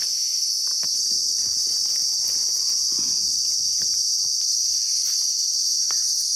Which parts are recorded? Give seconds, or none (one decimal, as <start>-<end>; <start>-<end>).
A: 0.0-6.4